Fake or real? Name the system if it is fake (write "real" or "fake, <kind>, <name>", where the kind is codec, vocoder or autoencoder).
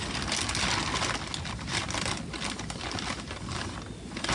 real